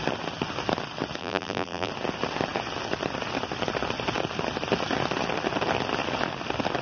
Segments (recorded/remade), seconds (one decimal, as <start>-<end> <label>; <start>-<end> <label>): 0.0-1.2 recorded; 1.2-1.9 remade; 1.9-6.8 recorded